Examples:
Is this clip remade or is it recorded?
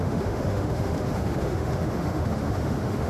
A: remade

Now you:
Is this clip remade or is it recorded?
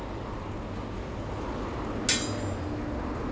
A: recorded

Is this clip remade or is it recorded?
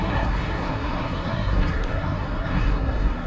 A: remade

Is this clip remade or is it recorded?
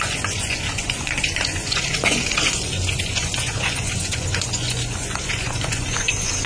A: remade